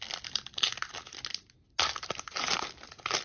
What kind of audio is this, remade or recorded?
recorded